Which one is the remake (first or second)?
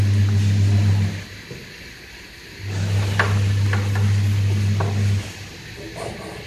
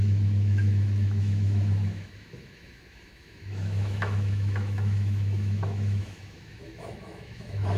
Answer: second